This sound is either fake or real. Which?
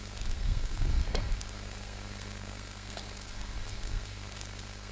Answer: fake